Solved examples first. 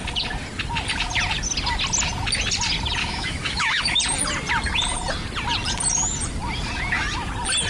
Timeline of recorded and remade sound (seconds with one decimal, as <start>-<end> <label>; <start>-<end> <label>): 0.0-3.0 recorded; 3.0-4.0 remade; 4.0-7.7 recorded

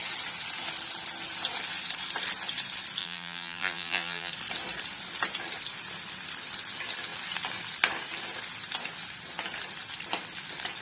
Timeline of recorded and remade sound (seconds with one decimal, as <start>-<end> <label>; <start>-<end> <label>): 0.0-3.0 recorded; 3.0-4.3 remade; 4.3-10.8 recorded

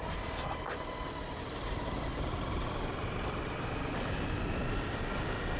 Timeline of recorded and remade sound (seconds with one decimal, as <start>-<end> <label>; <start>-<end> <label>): 0.0-5.6 recorded

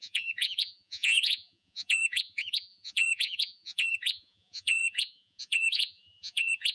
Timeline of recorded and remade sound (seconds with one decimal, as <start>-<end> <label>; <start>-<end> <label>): 0.0-6.7 remade

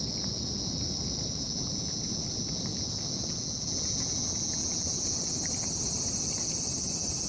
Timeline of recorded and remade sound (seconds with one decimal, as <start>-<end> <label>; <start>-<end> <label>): 0.0-7.3 recorded

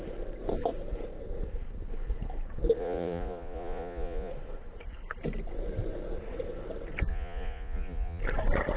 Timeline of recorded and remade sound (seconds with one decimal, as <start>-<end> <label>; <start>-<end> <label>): 0.0-2.8 recorded; 2.8-4.3 remade; 4.3-7.1 recorded; 7.1-8.2 remade; 8.2-8.8 recorded